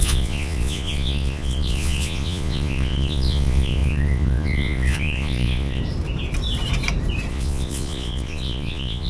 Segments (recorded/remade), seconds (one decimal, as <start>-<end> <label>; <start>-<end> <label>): 0.0-5.8 remade; 5.8-7.3 recorded; 7.3-9.1 remade